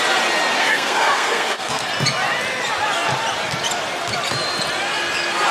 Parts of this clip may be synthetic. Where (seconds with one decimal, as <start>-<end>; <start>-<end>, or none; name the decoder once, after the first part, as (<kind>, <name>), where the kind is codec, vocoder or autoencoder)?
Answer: 0.6-1.9 (codec, SNAC)